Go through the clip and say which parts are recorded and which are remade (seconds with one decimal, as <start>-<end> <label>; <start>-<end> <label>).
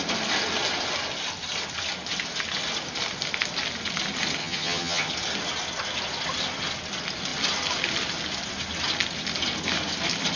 0.0-4.4 recorded; 4.4-5.1 remade; 5.1-10.4 recorded